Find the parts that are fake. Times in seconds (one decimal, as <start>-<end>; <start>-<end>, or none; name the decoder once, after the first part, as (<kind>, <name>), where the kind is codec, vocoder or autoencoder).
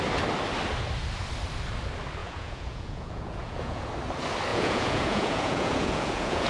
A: 2.2-3.9 (vocoder, Vocos); 4.5-6.5